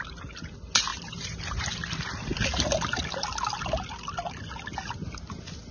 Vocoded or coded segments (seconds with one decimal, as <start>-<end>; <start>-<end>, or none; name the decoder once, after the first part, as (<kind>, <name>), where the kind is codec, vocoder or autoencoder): 0.9-1.6 (vocoder, BigVGAN v2)